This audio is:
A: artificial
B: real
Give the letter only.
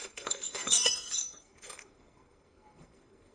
A